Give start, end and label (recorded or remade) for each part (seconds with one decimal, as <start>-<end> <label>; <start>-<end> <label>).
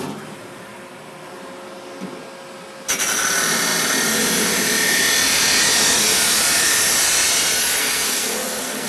0.0-7.8 recorded; 7.8-8.9 remade